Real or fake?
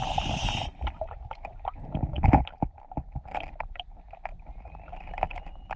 real